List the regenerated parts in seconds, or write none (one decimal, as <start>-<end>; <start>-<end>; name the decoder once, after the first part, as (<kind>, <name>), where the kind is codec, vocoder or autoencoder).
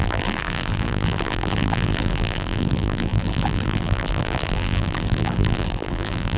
0.0-6.4 (vocoder, BigVGAN v2)